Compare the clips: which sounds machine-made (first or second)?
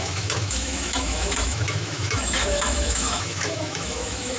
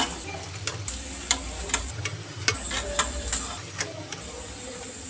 first